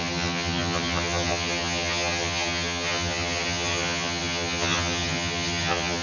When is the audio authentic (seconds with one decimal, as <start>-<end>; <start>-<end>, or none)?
none